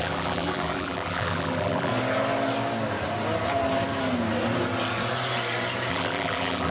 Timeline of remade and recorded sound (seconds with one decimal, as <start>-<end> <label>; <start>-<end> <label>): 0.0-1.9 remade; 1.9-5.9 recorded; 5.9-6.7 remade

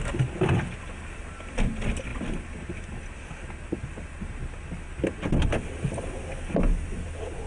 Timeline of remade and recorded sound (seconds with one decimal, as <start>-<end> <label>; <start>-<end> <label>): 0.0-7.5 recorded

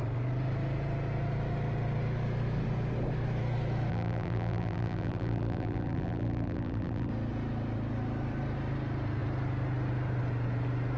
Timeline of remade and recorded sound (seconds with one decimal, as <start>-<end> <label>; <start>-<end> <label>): 0.0-3.9 recorded; 3.9-7.1 remade; 7.1-11.0 recorded